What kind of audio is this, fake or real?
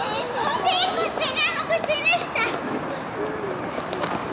real